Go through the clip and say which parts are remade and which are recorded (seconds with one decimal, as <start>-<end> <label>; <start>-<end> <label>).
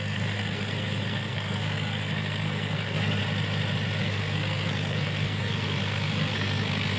0.0-3.2 remade; 3.2-4.0 recorded; 4.0-7.0 remade